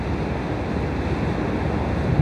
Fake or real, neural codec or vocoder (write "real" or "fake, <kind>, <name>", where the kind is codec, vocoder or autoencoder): real